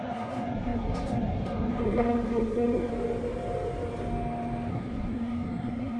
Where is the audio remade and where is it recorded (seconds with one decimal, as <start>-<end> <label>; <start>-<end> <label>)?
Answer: 0.0-2.9 remade; 2.9-4.7 recorded; 4.7-6.0 remade